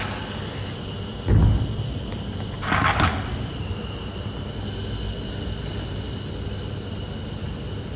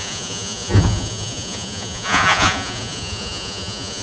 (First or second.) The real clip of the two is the first